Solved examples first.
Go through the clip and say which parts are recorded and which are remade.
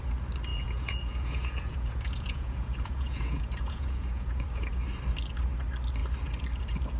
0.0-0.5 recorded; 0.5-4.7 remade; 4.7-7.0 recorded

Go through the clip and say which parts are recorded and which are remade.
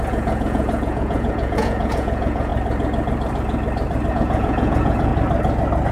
0.0-2.5 remade; 2.5-4.1 recorded; 4.1-5.1 remade; 5.1-5.9 recorded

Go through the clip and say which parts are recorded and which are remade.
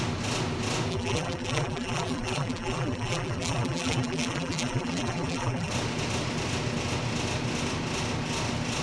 0.0-0.9 recorded; 0.9-5.7 remade; 5.7-8.8 recorded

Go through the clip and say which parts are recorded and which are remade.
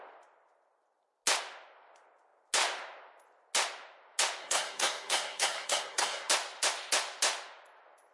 0.0-4.4 recorded; 4.4-6.3 remade; 6.3-8.1 recorded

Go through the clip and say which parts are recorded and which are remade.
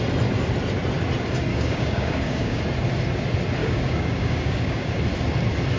0.0-1.5 recorded; 1.5-2.6 remade; 2.6-3.6 recorded; 3.6-5.0 remade; 5.0-5.8 recorded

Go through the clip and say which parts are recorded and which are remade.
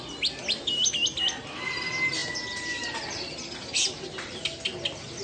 0.0-5.2 recorded